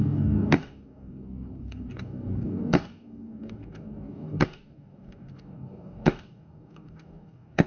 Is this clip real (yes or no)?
no